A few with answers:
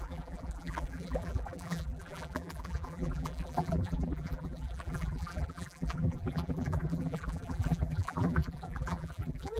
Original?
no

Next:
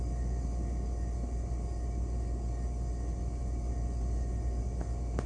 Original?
yes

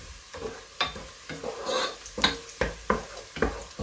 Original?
yes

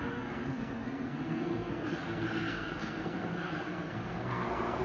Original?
no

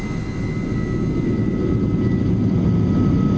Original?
yes